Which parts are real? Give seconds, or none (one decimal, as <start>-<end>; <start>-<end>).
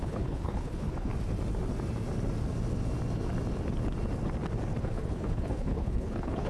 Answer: 1.1-4.8